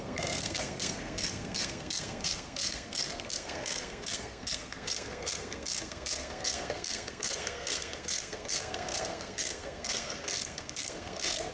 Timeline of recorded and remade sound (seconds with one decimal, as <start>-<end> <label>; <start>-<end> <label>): 0.0-11.5 remade